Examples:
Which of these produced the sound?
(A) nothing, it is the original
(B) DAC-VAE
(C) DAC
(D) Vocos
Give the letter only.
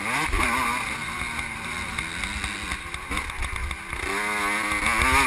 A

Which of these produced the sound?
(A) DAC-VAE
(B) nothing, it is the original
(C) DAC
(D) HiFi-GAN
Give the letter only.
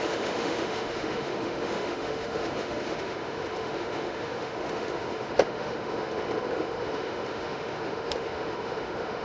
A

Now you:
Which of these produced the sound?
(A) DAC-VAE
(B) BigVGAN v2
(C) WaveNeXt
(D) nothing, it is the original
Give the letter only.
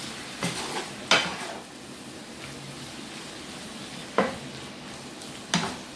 D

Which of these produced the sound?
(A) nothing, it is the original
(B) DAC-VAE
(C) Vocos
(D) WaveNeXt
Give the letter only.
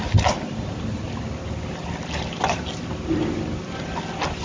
A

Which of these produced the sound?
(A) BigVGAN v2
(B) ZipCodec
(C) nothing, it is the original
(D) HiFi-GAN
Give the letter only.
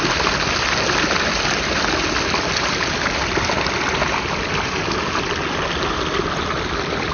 C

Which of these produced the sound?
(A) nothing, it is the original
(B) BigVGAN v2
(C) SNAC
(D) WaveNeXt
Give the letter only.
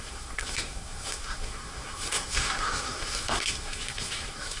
C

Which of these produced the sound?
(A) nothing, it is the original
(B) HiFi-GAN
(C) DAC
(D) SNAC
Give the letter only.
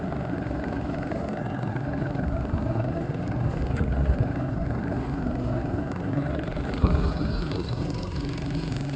D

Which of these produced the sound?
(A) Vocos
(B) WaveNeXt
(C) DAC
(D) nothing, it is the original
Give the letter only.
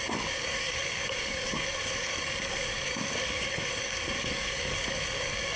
C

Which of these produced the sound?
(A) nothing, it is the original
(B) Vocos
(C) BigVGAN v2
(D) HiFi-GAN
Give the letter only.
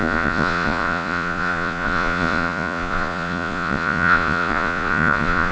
B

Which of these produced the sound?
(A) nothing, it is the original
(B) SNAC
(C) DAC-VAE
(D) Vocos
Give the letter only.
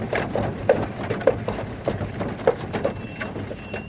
A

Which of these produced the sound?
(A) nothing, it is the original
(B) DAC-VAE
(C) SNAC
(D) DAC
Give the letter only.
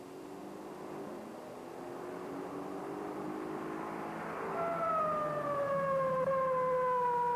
A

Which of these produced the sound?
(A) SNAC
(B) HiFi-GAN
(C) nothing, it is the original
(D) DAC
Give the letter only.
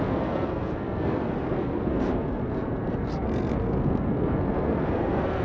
A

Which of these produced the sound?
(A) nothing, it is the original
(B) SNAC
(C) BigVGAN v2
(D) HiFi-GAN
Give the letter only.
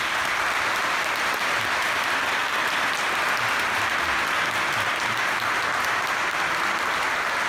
A